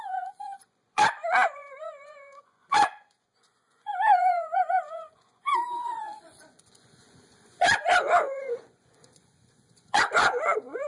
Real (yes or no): no